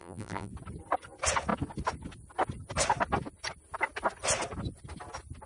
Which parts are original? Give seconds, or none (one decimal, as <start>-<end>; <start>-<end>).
0.5-5.5